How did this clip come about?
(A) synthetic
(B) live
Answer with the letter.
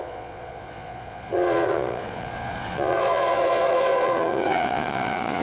A